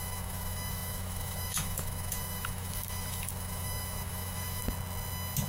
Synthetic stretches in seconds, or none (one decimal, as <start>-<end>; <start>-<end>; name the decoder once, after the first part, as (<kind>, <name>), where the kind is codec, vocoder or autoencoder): 0.0-4.6 (autoencoder, DAC-VAE)